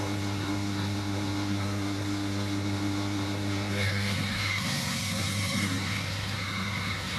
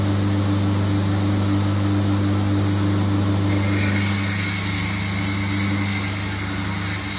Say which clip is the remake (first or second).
first